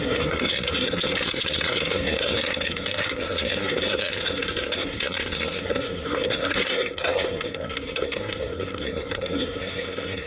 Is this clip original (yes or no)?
no